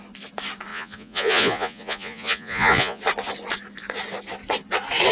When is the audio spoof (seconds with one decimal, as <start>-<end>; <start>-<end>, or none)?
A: 0.7-3.0

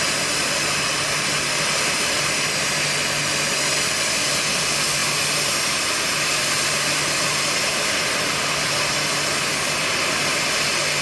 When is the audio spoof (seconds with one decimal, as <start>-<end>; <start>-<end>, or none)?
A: none

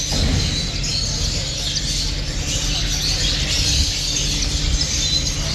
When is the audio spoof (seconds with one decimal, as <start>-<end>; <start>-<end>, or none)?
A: none

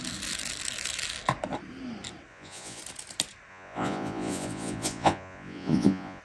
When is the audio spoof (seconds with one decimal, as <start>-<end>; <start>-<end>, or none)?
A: 2.3-2.8; 3.5-6.2

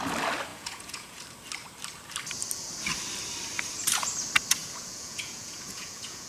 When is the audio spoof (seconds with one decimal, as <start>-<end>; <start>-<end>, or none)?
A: 0.5-1.2; 4.6-6.3

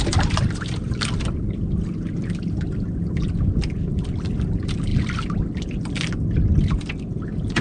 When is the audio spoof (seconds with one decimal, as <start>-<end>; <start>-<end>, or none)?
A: none